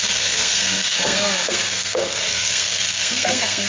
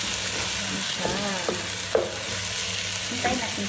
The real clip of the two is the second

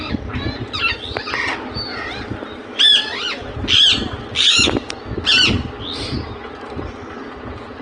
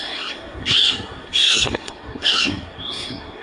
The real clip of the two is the first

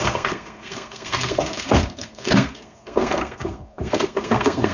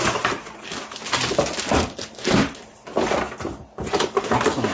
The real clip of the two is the second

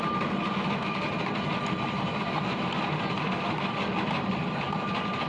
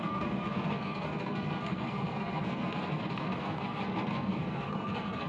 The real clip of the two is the first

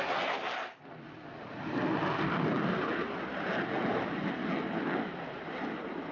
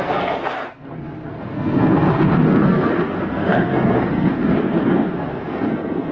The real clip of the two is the first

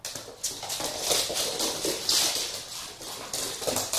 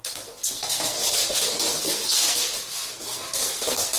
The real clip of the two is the first